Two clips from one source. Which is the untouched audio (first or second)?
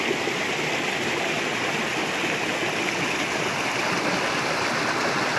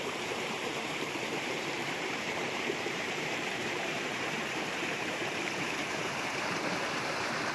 first